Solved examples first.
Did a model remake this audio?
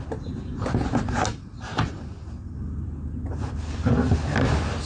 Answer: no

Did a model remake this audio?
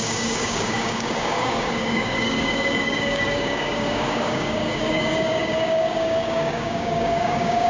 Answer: yes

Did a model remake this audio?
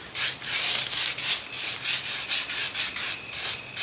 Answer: no